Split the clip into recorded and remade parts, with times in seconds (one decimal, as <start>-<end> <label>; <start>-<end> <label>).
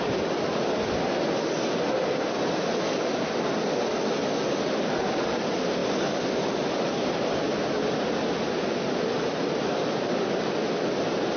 0.0-11.4 recorded